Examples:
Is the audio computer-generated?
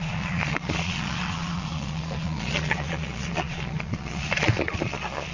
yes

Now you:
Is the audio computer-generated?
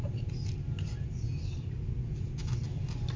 no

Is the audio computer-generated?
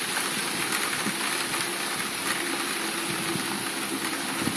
no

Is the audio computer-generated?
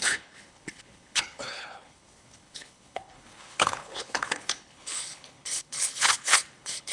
yes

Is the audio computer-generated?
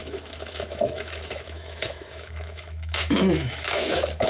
yes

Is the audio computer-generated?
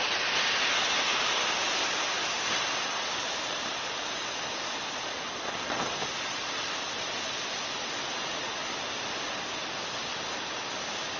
no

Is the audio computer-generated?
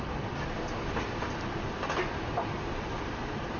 no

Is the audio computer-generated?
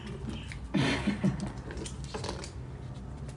no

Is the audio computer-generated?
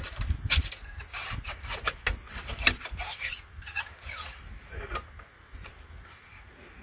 no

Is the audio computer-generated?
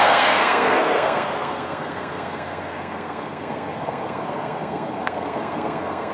yes